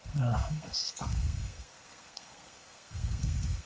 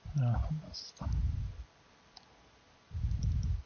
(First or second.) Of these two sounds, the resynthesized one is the first